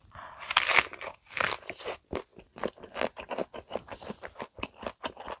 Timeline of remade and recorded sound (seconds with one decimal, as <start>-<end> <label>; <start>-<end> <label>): 0.0-5.4 recorded